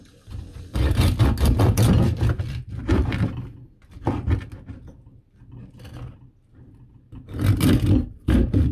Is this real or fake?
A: real